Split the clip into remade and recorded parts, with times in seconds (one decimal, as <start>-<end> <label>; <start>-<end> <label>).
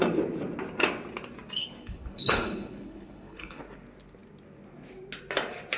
0.0-1.6 recorded; 1.6-3.6 remade; 3.6-5.8 recorded